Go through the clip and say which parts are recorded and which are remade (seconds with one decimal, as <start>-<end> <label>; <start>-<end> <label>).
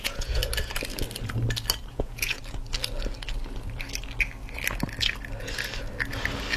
0.0-0.4 remade; 0.4-1.9 recorded; 1.9-2.4 remade; 2.4-6.6 recorded